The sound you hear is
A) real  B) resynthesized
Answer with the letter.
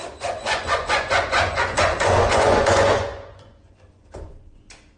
B